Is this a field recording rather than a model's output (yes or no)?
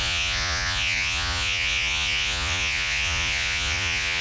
no